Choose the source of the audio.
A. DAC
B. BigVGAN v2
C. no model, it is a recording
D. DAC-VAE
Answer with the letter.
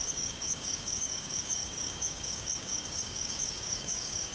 A